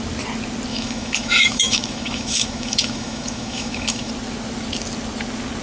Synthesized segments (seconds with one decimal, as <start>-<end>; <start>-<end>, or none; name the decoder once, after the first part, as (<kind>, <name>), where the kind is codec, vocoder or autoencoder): 0.7-4.1 (autoencoder, DAC-VAE)